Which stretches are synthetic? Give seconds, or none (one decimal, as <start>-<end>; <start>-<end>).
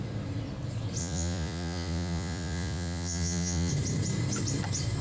1.0-3.7